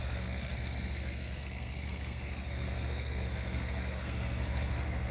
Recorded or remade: remade